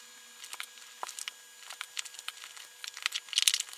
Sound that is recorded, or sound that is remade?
recorded